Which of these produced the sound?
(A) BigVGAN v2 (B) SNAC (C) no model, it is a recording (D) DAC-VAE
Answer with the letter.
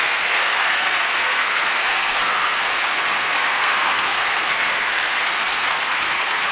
B